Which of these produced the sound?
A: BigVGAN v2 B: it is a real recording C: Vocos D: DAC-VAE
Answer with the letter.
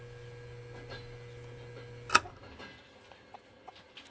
B